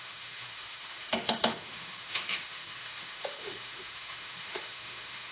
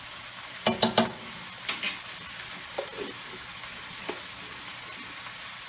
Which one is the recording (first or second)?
second